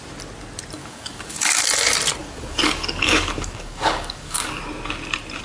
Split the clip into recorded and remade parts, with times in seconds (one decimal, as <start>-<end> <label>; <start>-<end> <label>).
0.0-0.8 recorded; 0.8-1.6 remade; 1.6-2.2 recorded; 2.2-4.6 remade; 4.6-5.4 recorded

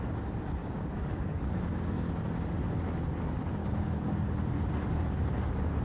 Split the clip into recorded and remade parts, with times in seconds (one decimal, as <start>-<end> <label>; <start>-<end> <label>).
0.0-0.6 recorded; 0.6-2.1 remade; 2.1-3.6 recorded; 3.6-4.4 remade; 4.4-5.8 recorded

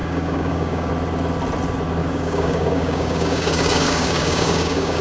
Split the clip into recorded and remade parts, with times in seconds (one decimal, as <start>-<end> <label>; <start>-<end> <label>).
0.0-0.9 remade; 0.9-2.0 recorded; 2.0-5.0 remade

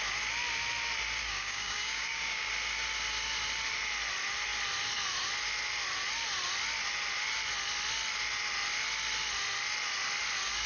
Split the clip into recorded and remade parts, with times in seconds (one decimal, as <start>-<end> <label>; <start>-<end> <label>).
0.0-1.2 recorded; 1.2-2.5 remade; 2.5-10.7 recorded

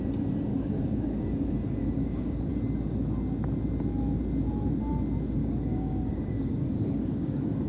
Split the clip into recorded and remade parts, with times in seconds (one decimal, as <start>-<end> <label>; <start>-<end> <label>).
0.0-0.5 recorded; 0.5-1.3 remade; 1.3-1.8 recorded; 1.8-2.5 remade; 2.5-5.4 recorded; 5.4-7.7 remade

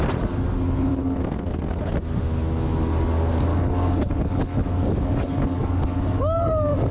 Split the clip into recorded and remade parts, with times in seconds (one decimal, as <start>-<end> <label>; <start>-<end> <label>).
0.0-0.9 recorded; 0.9-1.8 remade; 1.8-3.5 recorded; 3.5-6.9 remade